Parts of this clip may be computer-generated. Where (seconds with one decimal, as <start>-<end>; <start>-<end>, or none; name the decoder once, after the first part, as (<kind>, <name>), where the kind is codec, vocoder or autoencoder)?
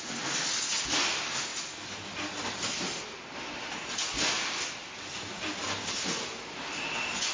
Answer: 4.8-6.8 (vocoder, BigVGAN v2)